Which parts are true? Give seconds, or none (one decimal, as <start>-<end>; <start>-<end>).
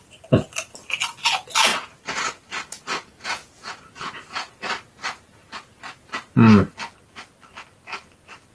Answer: 0.0-1.7; 4.5-8.5